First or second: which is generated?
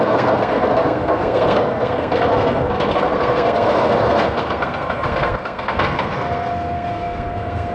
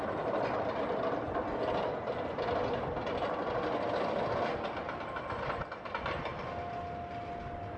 first